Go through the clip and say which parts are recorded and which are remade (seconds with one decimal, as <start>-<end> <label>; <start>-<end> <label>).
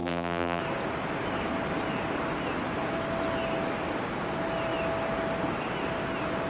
0.0-0.6 remade; 0.6-6.5 recorded